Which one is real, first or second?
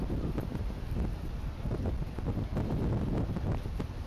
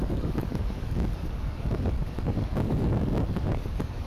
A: first